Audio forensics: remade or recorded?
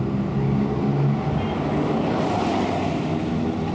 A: recorded